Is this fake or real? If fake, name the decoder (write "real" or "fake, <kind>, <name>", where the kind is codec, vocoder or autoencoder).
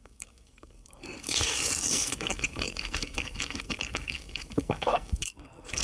fake, codec, SNAC